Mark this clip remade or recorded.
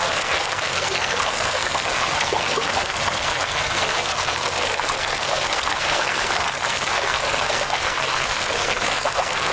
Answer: remade